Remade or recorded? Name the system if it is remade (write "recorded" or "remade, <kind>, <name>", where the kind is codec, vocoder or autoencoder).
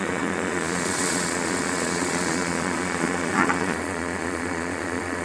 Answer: remade, vocoder, Vocos